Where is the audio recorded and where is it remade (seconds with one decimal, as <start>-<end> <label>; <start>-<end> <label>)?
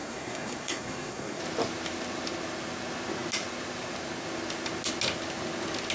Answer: 0.0-1.4 remade; 1.4-5.9 recorded